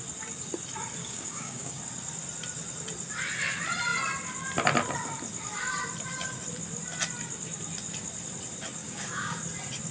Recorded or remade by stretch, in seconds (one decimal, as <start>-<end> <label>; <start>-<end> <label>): 0.0-1.0 recorded; 1.0-1.8 remade; 1.8-8.8 recorded; 8.8-9.4 remade; 9.4-9.9 recorded